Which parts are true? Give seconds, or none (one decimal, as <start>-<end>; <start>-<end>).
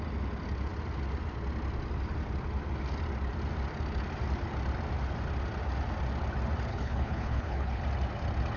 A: 0.0-6.7; 7.8-8.6